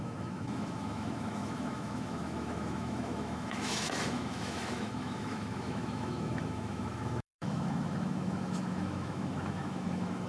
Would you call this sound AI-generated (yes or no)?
yes